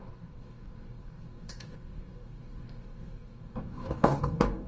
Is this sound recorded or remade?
remade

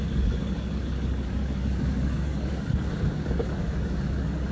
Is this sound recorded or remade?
remade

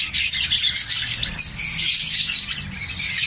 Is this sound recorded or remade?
recorded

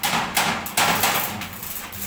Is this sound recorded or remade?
recorded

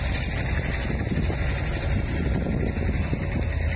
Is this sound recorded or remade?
recorded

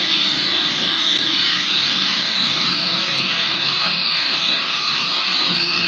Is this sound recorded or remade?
remade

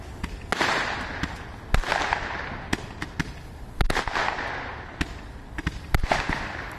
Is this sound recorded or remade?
recorded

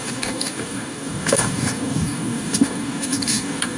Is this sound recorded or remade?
remade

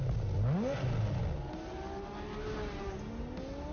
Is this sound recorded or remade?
recorded